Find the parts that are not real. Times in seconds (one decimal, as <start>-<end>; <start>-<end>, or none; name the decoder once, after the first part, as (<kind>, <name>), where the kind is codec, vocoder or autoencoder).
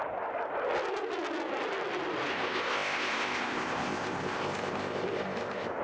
2.3-5.8 (codec, ZipCodec)